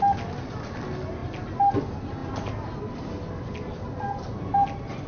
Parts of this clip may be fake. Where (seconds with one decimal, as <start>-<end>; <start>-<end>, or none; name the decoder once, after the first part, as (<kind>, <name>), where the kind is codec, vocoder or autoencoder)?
none

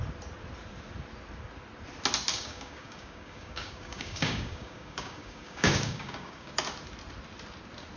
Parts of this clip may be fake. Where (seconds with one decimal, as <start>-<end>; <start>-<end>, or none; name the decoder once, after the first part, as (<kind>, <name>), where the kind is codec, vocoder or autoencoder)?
2.3-6.6 (codec, DAC)

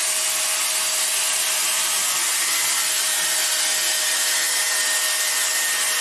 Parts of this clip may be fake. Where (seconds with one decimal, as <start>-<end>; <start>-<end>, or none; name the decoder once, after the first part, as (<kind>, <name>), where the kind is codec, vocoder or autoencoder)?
none

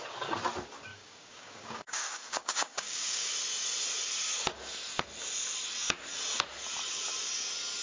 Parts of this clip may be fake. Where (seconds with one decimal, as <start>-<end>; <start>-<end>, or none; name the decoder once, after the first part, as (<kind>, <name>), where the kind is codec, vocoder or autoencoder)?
0.9-3.3 (codec, DAC)

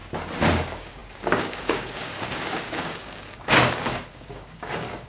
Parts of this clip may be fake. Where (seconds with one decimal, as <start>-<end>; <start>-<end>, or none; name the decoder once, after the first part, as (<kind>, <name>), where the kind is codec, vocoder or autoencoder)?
0.5-5.1 (codec, DAC)

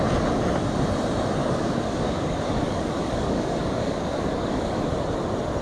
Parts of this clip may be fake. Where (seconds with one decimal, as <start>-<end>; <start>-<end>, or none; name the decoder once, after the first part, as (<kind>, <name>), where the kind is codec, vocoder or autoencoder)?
1.4-4.8 (codec, DAC)